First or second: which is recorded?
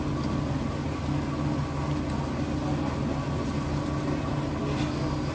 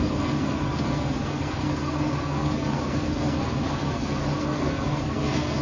first